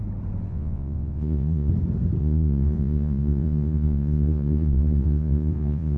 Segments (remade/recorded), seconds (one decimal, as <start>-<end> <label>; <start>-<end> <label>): 0.0-0.5 recorded; 0.5-1.7 remade; 1.7-2.2 recorded; 2.2-6.0 remade